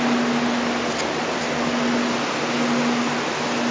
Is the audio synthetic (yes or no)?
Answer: no